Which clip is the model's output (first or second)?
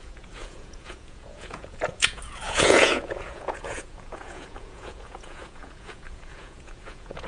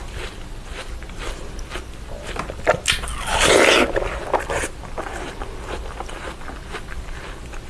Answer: first